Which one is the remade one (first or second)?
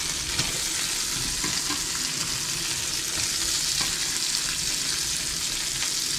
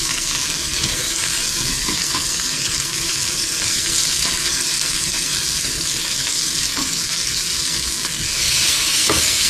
second